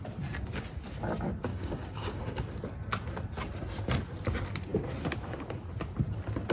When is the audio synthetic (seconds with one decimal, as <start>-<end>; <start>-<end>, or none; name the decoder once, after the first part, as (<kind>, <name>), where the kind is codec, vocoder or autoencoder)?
1.5-2.2 (codec, DAC)